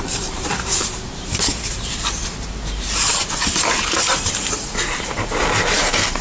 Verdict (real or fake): fake